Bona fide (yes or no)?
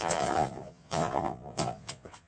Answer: no